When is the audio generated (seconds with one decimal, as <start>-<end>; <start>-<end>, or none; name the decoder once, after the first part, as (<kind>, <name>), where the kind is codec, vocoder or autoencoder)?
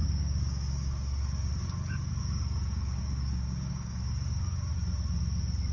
0.0-1.5 (codec, DAC); 2.2-4.7